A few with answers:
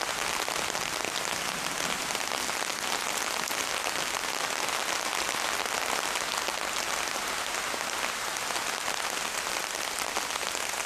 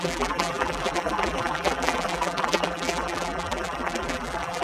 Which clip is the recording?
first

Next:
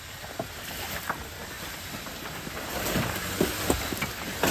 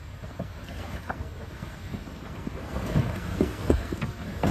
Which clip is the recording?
first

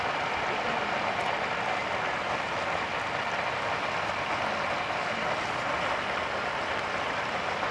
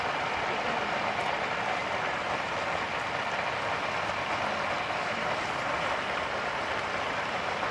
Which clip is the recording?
first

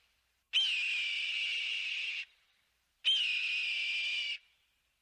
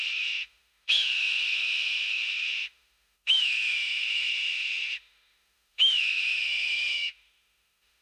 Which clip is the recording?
first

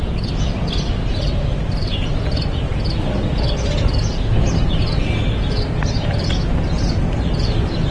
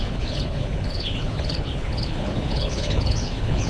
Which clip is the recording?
first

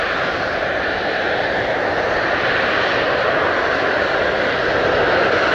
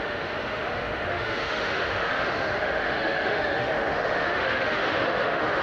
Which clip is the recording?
first